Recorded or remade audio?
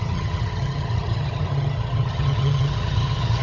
remade